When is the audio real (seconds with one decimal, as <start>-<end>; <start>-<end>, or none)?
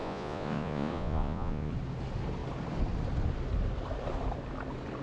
1.7-5.0